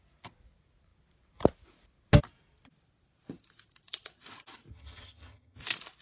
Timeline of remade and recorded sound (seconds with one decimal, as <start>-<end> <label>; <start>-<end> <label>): 0.0-4.7 recorded; 4.7-5.6 remade; 5.6-6.0 recorded